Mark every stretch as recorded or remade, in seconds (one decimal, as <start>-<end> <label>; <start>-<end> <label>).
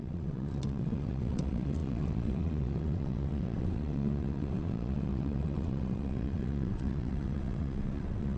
0.0-8.4 remade